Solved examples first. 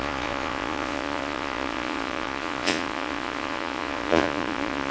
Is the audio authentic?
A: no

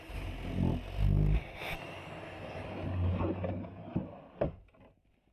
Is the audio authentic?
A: yes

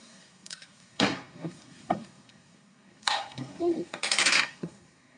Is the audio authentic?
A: no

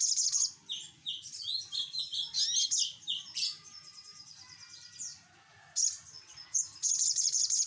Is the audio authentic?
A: yes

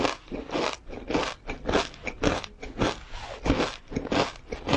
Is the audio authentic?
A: yes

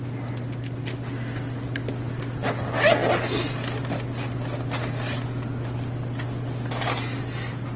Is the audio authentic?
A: yes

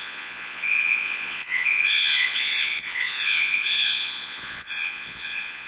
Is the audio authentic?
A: no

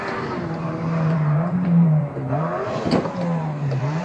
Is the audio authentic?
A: no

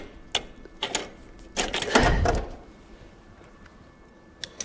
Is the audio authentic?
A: yes